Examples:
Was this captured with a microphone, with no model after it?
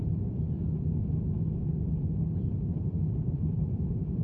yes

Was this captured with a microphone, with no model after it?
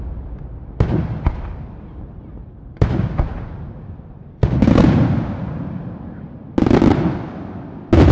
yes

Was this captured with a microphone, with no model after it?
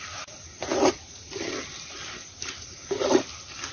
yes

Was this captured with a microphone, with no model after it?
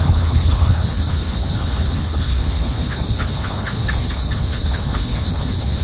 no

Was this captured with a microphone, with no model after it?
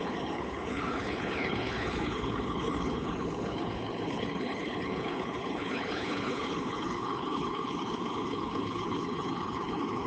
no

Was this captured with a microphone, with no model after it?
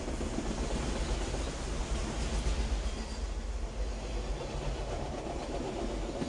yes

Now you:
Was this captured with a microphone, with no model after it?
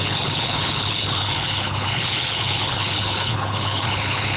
no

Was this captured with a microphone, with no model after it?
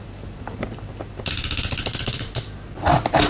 yes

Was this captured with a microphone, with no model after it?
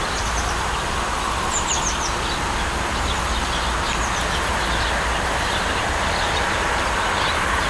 yes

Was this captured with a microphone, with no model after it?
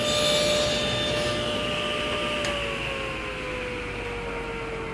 yes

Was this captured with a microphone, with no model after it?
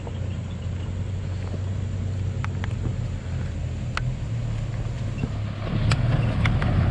yes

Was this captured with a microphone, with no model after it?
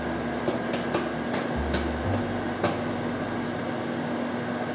yes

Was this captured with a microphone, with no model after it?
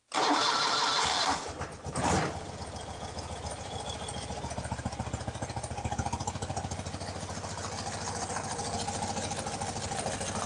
yes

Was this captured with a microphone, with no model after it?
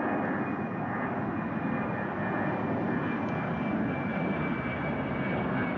yes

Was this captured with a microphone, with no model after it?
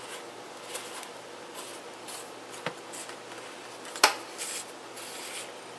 yes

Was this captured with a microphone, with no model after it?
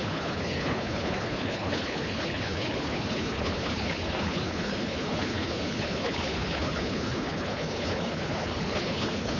no